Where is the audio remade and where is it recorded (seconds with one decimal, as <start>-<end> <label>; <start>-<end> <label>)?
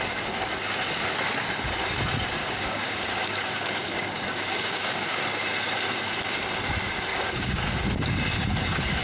0.0-2.4 recorded; 2.4-5.2 remade; 5.2-7.1 recorded; 7.1-7.7 remade; 7.7-9.0 recorded